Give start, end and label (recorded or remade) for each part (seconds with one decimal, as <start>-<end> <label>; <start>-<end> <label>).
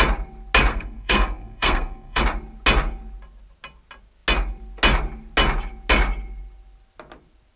0.0-0.7 recorded; 0.7-2.2 remade; 2.2-7.6 recorded